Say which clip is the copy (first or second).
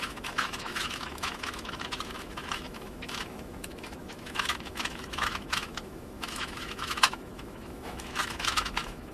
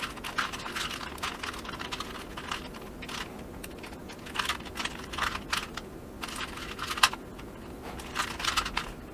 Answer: first